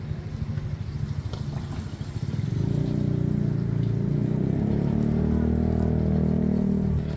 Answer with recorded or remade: recorded